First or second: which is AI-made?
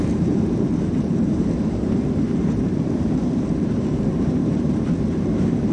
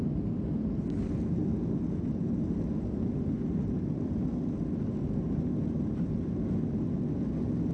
first